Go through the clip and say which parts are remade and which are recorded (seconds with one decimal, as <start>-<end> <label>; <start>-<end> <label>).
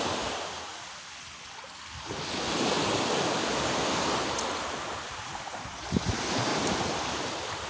0.0-0.7 remade; 0.7-5.1 recorded; 5.1-6.5 remade; 6.5-7.2 recorded; 7.2-7.7 remade